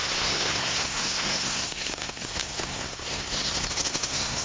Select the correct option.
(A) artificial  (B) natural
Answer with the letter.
A